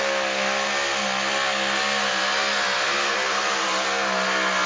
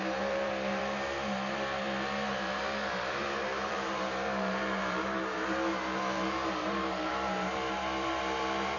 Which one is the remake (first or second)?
second